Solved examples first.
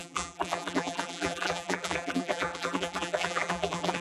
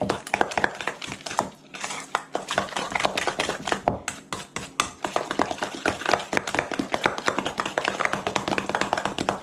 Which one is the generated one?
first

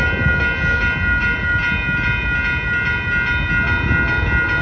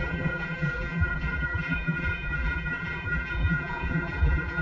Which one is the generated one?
second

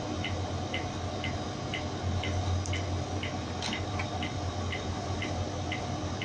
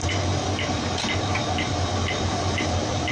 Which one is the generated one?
second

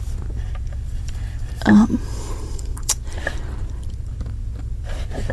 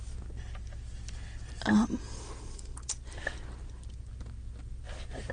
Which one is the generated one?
first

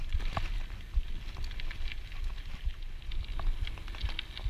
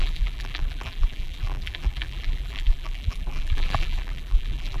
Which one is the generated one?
second